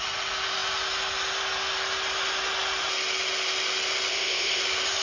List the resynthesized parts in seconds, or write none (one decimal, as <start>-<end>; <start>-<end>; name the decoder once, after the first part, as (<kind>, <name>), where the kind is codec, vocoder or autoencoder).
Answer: 4.1-4.6 (codec, ZipCodec)